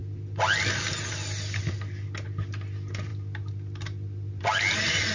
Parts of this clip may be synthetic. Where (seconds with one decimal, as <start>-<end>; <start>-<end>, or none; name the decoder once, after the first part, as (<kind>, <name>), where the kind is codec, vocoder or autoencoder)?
none

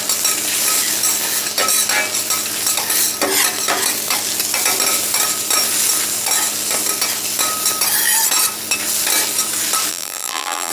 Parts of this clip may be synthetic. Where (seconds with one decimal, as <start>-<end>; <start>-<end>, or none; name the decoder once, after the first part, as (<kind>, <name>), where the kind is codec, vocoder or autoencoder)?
9.9-10.7 (vocoder, BigVGAN v2)